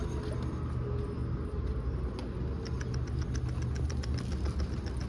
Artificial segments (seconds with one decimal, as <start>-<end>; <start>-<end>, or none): none